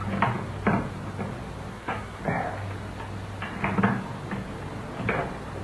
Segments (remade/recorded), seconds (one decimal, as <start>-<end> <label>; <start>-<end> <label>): 0.0-1.7 recorded; 1.7-2.2 remade; 2.2-5.6 recorded